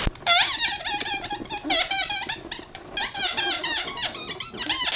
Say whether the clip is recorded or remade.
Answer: recorded